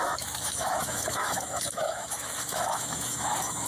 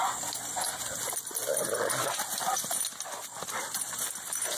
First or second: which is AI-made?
first